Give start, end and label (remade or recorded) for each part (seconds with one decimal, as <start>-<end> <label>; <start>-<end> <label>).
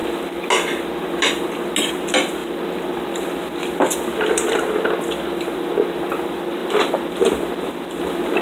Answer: 0.0-6.6 recorded; 6.6-8.0 remade; 8.0-8.4 recorded